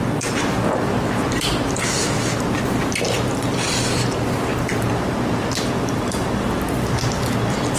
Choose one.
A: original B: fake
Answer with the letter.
A